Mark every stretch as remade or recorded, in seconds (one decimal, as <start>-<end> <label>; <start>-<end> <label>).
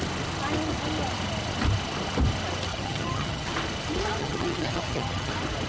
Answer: 0.0-2.7 recorded; 2.7-3.5 remade; 3.5-4.2 recorded; 4.2-5.3 remade; 5.3-5.7 recorded